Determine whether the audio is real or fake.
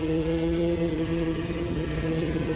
fake